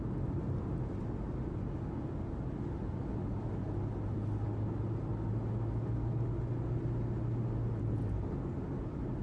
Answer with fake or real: real